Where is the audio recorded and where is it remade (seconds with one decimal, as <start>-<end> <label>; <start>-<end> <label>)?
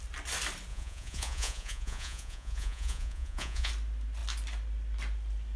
0.0-0.7 recorded; 0.7-3.7 remade; 3.7-5.6 recorded